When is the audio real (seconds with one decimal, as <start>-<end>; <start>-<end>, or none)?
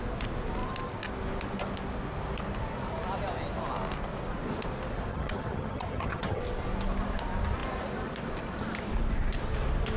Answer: 0.0-5.1; 6.4-10.0